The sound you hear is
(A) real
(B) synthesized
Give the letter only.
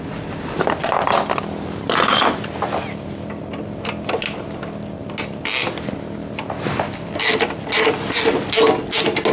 A